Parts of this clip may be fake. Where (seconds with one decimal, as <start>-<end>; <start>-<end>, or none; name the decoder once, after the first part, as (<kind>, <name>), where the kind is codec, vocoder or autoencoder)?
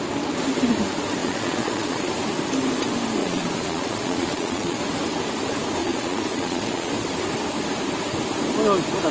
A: 1.2-2.1 (vocoder, Vocos); 3.2-4.8; 5.8-6.9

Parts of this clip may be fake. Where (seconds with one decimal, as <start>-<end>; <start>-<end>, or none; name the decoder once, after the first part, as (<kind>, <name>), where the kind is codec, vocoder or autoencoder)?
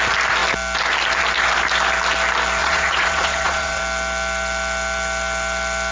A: 2.6-3.8 (vocoder, Vocos)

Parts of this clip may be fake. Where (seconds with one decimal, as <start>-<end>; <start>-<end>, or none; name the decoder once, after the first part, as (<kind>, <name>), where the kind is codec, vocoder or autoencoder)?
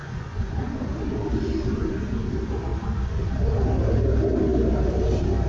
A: 0.0-0.8 (vocoder, Vocos)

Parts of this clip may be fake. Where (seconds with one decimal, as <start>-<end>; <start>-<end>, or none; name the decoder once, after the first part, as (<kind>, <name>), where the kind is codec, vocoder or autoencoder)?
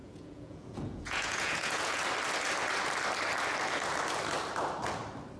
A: 0.0-2.0 (vocoder, Vocos)